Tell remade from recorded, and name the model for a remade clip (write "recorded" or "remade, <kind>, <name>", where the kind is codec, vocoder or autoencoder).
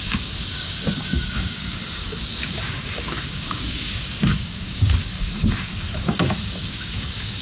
remade, codec, DAC